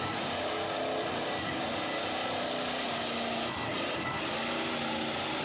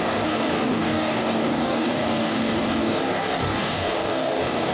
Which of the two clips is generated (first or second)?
second